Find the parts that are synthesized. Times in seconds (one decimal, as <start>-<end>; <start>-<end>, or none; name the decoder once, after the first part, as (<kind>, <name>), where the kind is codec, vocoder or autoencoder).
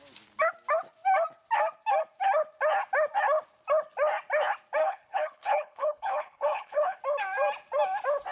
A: 4.8-7.0 (codec, HILCodec)